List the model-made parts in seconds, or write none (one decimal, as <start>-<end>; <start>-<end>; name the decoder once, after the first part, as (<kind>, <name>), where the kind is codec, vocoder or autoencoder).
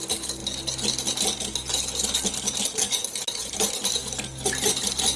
none